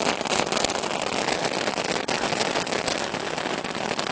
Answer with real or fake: real